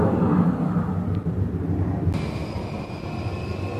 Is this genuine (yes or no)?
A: yes